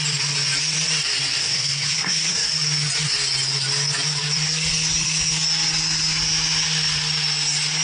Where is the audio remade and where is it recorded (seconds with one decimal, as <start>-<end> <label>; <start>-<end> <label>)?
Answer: 0.0-1.4 recorded; 1.4-2.5 remade; 2.5-7.8 recorded